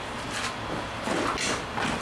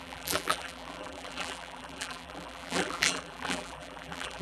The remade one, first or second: second